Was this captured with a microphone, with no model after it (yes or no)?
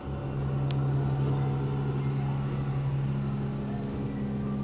yes